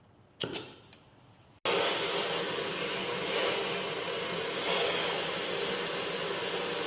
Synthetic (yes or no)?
no